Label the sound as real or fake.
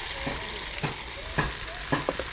real